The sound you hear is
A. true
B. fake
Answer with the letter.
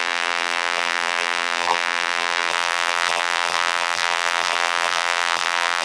B